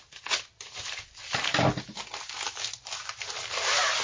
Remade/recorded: recorded